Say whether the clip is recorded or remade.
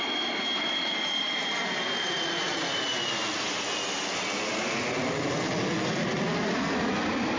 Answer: recorded